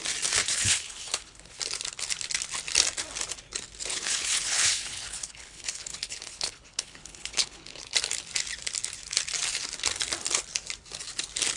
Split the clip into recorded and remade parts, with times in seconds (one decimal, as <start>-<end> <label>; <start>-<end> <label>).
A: 0.0-0.4 recorded; 0.4-1.6 remade; 1.6-3.9 recorded; 3.9-7.8 remade; 7.8-11.6 recorded